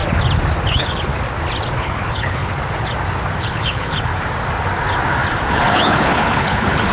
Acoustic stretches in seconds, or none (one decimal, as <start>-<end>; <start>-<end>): 0.0-0.7; 1.1-1.8; 2.5-3.4; 4.1-5.5